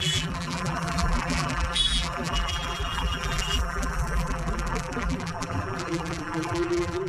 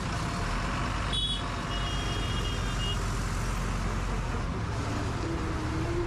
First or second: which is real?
second